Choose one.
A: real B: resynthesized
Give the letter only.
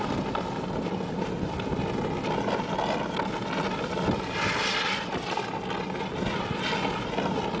A